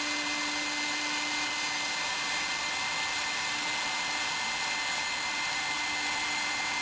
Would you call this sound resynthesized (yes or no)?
yes